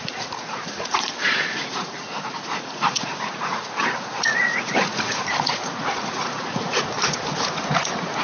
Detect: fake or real fake